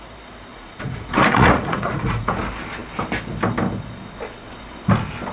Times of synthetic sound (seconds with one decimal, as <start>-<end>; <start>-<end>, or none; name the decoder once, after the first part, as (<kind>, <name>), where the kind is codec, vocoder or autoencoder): 0.5-2.4 (vocoder, Vocos)